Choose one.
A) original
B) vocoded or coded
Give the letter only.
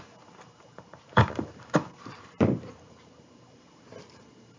B